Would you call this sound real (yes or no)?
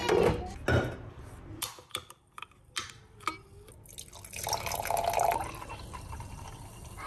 yes